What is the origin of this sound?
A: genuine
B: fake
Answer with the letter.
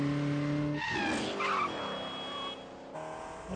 A